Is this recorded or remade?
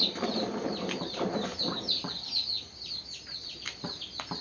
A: recorded